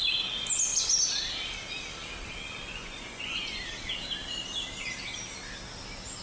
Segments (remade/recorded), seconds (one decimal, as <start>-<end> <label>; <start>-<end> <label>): 0.0-2.7 recorded; 2.7-3.6 remade; 3.6-6.2 recorded